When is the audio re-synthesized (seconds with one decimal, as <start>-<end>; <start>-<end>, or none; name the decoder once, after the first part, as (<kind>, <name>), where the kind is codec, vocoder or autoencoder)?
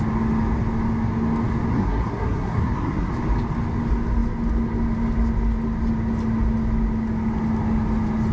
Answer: 1.7-3.1 (codec, SNAC)